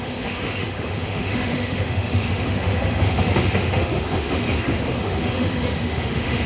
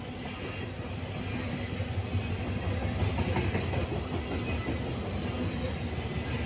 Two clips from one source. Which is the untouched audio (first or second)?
second